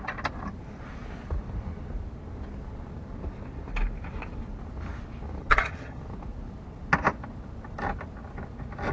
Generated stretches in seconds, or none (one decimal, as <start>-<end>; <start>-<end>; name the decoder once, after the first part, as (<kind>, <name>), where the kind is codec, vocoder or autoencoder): 5.4-6.0 (vocoder, HiFi-GAN)